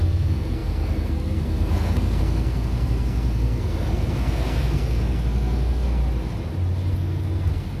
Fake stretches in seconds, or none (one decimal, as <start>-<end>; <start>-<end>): 0.0-6.0; 6.9-7.8